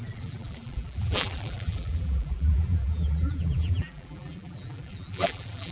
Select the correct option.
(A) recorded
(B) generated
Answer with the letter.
B